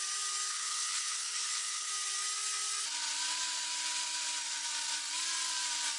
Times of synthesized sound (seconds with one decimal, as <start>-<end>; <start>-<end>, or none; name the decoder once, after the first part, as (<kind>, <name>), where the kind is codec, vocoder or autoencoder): 0.5-1.9 (codec, HILCodec)